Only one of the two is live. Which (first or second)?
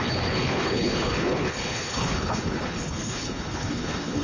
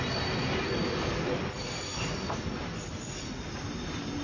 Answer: second